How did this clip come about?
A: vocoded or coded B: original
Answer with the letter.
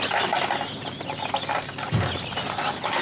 B